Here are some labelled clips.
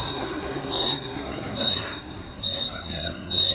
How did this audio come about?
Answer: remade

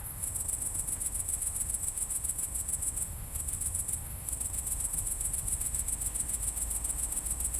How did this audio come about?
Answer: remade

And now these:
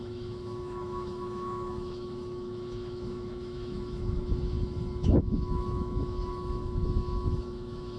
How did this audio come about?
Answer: remade